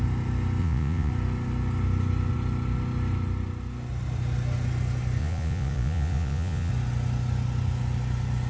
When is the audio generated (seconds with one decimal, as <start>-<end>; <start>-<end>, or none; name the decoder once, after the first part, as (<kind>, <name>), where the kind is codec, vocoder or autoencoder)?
0.6-1.1 (vocoder, Vocos); 5.2-6.7